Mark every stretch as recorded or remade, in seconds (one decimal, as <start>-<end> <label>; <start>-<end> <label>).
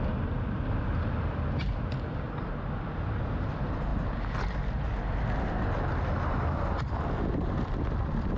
0.0-8.4 recorded